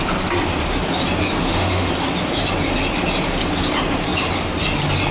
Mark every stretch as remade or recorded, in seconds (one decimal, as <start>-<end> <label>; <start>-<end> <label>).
0.0-1.4 recorded; 1.4-1.9 remade; 1.9-5.1 recorded